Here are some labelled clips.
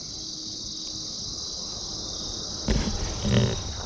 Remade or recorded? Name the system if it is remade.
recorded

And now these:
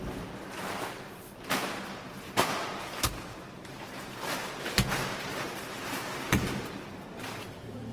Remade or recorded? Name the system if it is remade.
remade, vocoder, BigVGAN v2